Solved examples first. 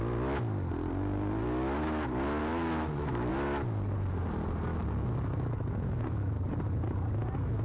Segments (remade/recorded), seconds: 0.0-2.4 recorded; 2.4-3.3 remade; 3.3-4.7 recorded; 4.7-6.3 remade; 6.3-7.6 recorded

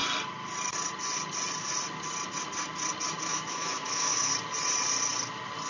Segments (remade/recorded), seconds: 0.0-3.3 recorded; 3.3-4.3 remade; 4.3-5.7 recorded

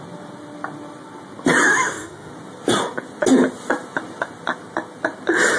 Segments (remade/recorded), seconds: 0.0-1.7 recorded; 1.7-2.3 remade; 2.3-5.6 recorded